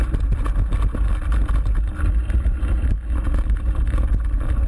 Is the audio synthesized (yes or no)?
no